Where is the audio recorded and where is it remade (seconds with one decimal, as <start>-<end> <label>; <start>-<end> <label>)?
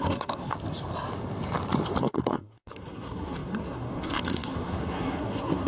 0.0-0.5 remade; 0.5-2.0 recorded; 2.0-5.7 remade